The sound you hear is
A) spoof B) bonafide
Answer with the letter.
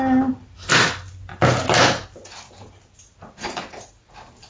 B